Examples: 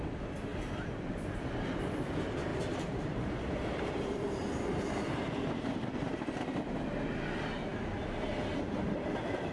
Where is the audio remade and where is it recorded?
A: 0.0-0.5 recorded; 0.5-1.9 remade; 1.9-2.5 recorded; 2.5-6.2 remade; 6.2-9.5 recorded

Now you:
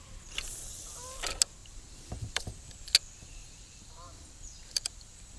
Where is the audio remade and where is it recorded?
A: 0.0-1.6 recorded; 1.6-2.4 remade; 2.4-3.4 recorded; 3.4-5.4 remade

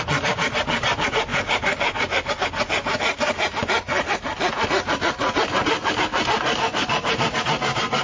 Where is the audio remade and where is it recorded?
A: 0.0-1.3 recorded; 1.3-2.3 remade; 2.3-6.8 recorded; 6.8-7.4 remade; 7.4-8.0 recorded

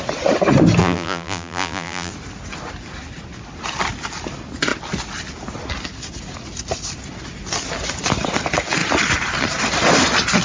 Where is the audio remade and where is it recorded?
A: 0.0-0.8 recorded; 0.8-2.1 remade; 2.1-10.4 recorded

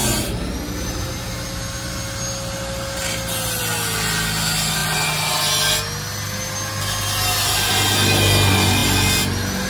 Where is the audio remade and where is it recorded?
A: 0.0-9.7 recorded